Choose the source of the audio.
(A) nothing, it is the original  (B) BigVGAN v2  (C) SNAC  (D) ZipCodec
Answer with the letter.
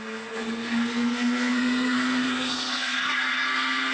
C